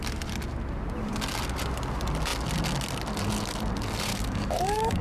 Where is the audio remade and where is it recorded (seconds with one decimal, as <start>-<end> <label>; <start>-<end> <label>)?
0.0-4.1 recorded; 4.1-5.0 remade